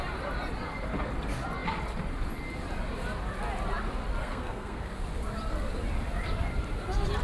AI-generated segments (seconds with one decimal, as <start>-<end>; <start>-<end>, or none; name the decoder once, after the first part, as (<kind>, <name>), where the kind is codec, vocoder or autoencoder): 4.2-4.9 (codec, SNAC)